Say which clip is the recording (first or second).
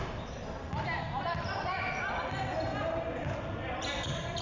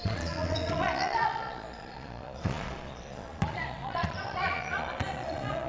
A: first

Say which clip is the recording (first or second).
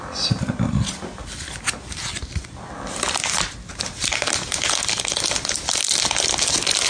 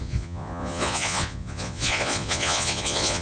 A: first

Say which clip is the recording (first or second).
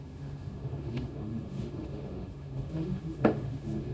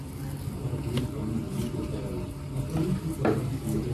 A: second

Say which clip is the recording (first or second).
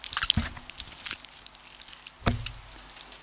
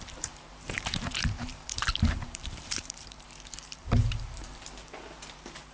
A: first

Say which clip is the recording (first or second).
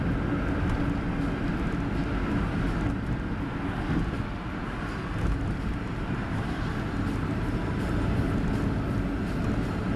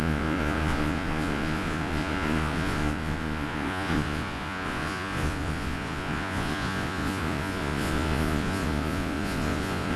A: first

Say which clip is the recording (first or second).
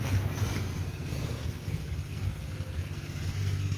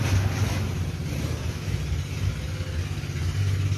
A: second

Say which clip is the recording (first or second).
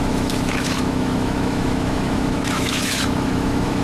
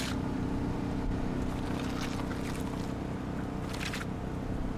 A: second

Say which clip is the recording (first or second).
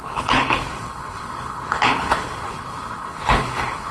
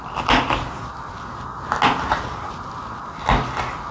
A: second